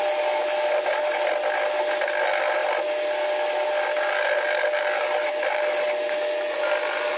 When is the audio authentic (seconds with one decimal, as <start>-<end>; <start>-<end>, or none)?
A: 0.0-7.2